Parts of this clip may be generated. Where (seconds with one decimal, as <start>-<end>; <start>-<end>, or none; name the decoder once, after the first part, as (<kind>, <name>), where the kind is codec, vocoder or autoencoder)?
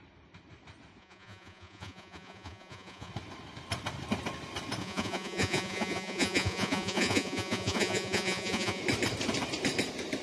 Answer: 1.0-3.1 (vocoder, Vocos); 4.8-8.8